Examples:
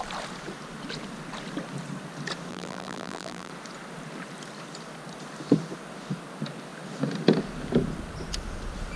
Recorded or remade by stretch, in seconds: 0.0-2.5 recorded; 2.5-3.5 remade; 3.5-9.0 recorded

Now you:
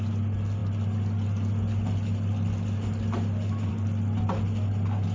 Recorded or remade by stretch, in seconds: 0.0-5.1 recorded

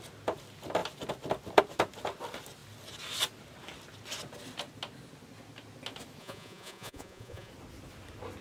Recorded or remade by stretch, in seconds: 0.0-6.2 recorded; 6.2-7.5 remade; 7.5-8.4 recorded

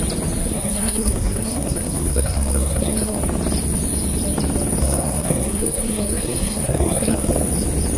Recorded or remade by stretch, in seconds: 0.0-0.4 recorded; 0.4-3.2 remade; 3.2-4.8 recorded; 4.8-7.3 remade; 7.3-8.0 recorded

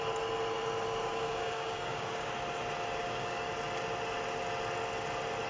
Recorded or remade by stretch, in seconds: 0.0-1.0 recorded; 1.0-2.3 remade; 2.3-3.0 recorded; 3.0-3.5 remade; 3.5-5.5 recorded

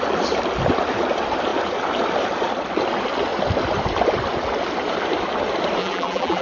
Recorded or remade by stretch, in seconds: 0.0-5.8 recorded; 5.8-6.4 remade

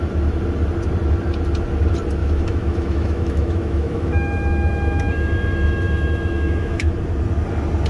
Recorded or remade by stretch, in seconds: 0.0-2.2 recorded; 2.2-6.9 remade; 6.9-7.9 recorded